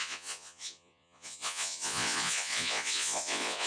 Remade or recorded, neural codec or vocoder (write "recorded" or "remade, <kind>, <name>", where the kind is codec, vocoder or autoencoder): remade, vocoder, Vocos